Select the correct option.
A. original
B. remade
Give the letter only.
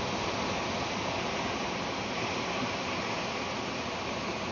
A